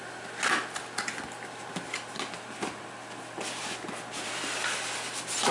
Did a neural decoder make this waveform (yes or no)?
no